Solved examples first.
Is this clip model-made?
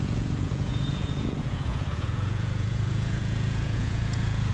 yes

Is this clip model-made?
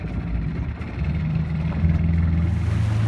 no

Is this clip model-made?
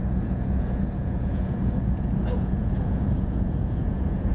yes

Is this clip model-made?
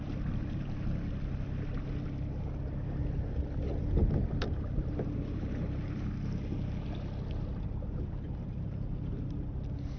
no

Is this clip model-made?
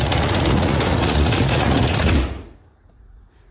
yes